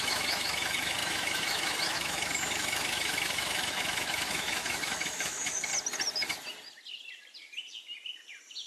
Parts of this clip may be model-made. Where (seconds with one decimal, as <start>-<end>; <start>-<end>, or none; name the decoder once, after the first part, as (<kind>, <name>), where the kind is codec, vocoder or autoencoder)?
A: 0.0-5.7 (autoencoder, DAC-VAE)